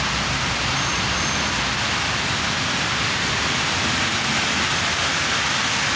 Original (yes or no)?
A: yes